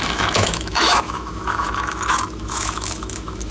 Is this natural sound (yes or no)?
no